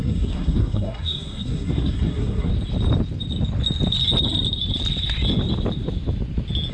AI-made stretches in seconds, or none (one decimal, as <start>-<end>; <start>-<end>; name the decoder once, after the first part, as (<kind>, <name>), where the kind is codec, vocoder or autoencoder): 0.0-2.5 (codec, SNAC)